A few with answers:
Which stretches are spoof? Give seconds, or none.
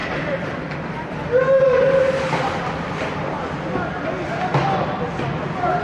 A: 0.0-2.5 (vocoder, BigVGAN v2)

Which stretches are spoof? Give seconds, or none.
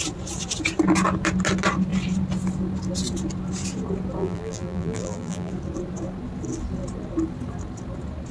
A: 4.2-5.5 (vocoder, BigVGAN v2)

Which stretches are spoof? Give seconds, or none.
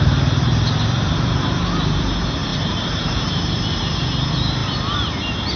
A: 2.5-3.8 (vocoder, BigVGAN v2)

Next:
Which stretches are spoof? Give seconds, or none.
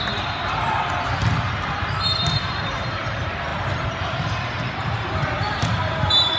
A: 0.0-1.2 (vocoder, BigVGAN v2); 1.9-6.4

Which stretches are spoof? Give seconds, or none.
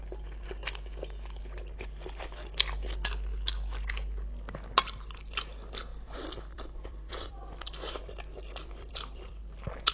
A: 5.9-9.4 (vocoder, BigVGAN v2)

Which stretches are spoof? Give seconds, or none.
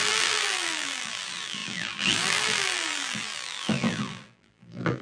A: 0.0-5.0 (vocoder, BigVGAN v2)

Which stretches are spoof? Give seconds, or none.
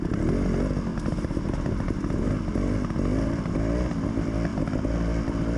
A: 0.9-2.3 (vocoder, BigVGAN v2)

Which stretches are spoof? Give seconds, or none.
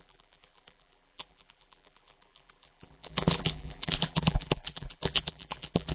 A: 0.0-5.9 (vocoder, BigVGAN v2)